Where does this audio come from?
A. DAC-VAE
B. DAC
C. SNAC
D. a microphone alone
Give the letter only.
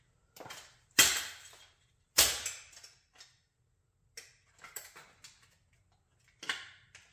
D